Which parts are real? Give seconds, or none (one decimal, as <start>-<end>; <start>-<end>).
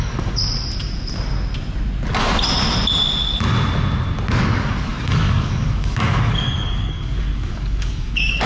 0.4-4.3